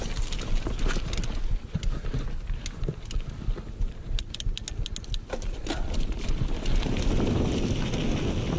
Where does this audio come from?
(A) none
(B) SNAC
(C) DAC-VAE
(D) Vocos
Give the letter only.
A